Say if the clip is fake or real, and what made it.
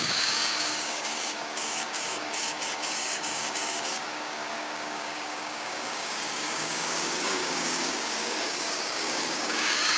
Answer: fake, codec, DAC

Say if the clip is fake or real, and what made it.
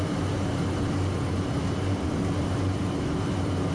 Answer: fake, vocoder, BigVGAN v2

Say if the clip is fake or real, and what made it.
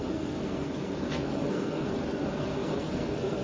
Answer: fake, codec, SNAC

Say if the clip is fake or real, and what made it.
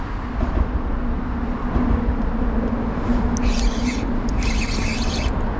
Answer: real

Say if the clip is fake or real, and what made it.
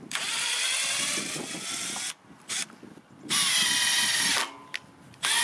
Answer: real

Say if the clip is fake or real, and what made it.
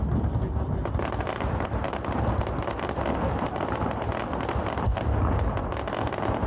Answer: real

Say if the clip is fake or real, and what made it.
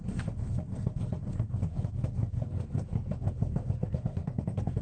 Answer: fake, codec, SNAC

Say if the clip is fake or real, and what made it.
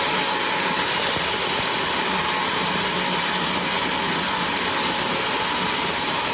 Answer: real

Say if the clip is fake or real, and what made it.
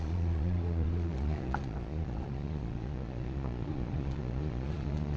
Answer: fake, vocoder, Vocos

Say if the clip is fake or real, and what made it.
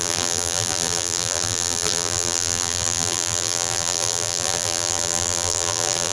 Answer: fake, vocoder, BigVGAN v2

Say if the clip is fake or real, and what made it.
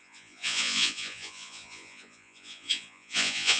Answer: fake, vocoder, Vocos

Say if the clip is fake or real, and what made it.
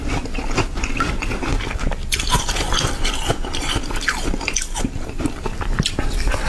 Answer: real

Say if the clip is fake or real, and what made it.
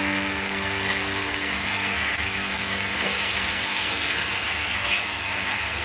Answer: fake, codec, SNAC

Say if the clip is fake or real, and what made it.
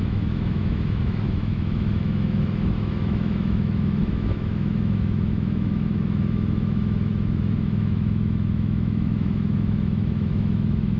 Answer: fake, autoencoder, DAC-VAE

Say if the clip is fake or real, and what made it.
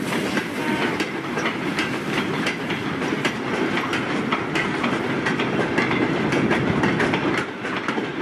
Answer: real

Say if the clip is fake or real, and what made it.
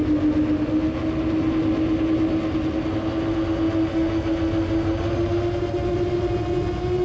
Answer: real